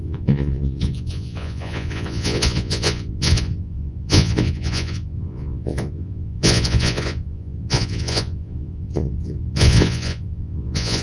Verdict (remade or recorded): remade